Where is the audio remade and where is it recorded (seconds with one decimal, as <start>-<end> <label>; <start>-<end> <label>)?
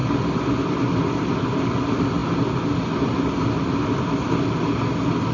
0.0-5.3 recorded